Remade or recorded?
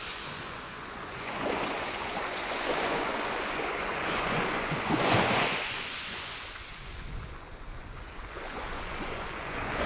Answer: remade